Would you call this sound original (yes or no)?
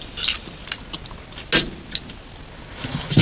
yes